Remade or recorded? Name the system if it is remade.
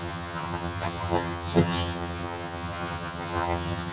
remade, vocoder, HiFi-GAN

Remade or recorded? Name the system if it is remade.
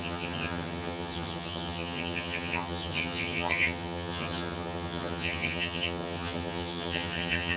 remade, vocoder, HiFi-GAN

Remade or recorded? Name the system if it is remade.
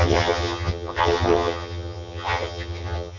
remade, vocoder, HiFi-GAN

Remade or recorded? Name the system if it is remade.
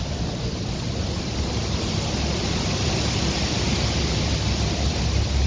recorded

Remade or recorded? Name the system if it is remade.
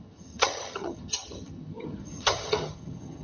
remade, vocoder, HiFi-GAN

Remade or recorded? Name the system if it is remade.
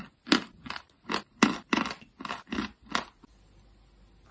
recorded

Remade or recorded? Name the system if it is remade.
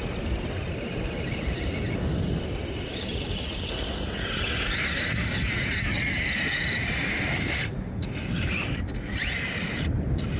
recorded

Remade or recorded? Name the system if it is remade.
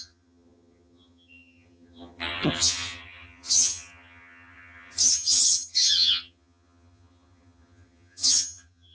remade, vocoder, HiFi-GAN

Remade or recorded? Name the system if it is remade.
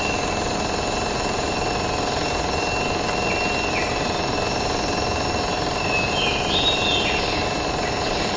recorded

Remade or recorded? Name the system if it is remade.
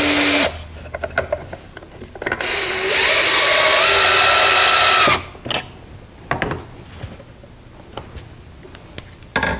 recorded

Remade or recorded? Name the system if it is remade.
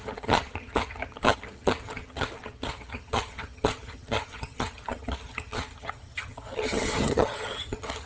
remade, vocoder, HiFi-GAN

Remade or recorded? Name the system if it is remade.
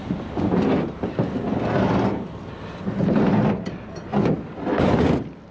recorded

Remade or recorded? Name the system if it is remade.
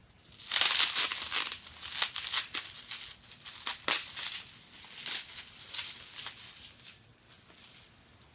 recorded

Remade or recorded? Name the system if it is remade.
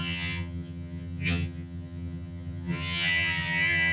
remade, vocoder, HiFi-GAN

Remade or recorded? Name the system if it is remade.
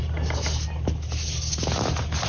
recorded